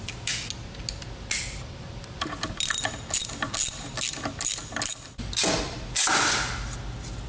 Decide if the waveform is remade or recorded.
recorded